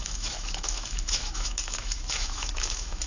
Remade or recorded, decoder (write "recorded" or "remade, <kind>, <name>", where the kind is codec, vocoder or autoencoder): remade, autoencoder, DAC-VAE